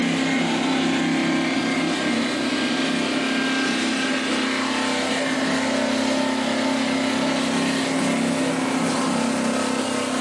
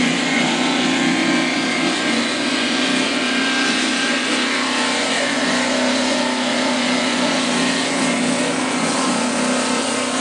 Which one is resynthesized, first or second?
second